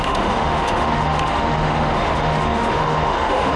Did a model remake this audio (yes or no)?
yes